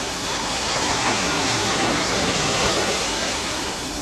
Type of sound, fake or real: fake